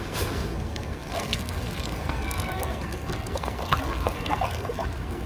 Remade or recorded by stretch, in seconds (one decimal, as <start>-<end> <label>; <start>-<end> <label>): 0.0-5.3 remade